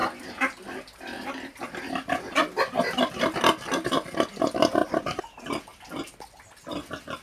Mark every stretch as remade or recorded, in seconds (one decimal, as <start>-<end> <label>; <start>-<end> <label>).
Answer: 0.0-4.3 remade; 4.3-4.8 recorded; 4.8-5.6 remade; 5.6-7.2 recorded